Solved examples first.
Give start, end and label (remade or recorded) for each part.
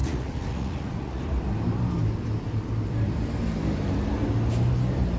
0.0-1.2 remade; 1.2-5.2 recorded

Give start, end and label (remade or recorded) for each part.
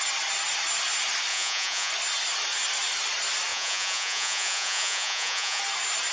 0.0-1.3 recorded; 1.3-1.9 remade; 1.9-3.5 recorded; 3.5-5.6 remade; 5.6-6.1 recorded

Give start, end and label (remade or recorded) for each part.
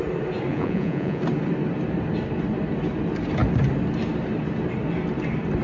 0.0-0.5 recorded; 0.5-1.2 remade; 1.2-5.6 recorded